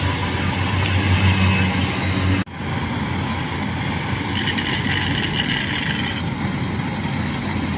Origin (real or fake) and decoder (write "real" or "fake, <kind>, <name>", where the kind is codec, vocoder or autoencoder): real